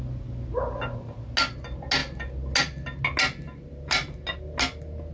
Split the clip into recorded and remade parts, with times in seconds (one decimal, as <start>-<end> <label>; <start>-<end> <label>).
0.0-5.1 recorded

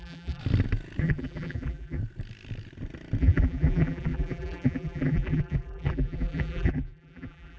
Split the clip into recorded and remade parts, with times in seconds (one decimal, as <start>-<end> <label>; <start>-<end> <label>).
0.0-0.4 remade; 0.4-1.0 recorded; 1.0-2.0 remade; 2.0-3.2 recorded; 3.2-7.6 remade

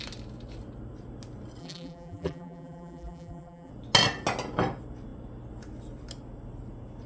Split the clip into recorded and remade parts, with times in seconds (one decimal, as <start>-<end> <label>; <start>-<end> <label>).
0.0-1.6 recorded; 1.6-3.7 remade; 3.7-7.1 recorded